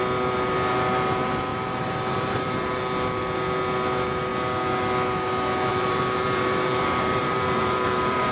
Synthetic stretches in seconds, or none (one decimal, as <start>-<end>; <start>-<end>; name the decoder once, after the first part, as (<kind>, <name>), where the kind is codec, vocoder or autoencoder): 1.5-2.8 (vocoder, BigVGAN v2); 5.7-8.3